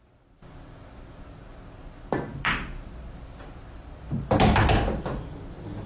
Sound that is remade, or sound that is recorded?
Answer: recorded